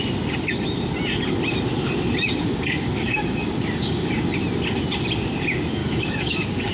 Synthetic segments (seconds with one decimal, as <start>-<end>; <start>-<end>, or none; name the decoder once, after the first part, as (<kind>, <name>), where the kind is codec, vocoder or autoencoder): 2.4-4.1 (codec, DAC); 5.8-6.7

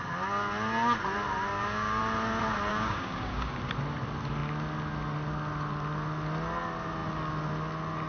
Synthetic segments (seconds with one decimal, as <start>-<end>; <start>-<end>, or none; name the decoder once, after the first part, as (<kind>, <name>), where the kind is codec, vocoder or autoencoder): 1.5-2.0 (codec, DAC); 2.7-3.5

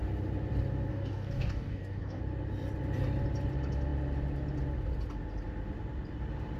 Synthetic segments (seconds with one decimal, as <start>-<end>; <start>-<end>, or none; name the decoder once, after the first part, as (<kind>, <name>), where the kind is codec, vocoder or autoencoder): 0.9-2.2 (codec, DAC)